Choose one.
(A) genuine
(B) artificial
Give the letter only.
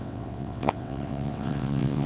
B